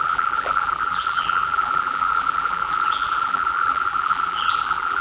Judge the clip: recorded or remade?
remade